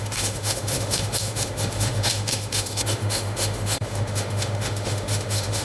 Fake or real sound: fake